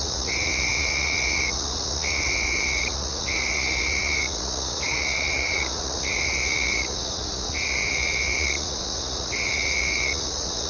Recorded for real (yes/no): no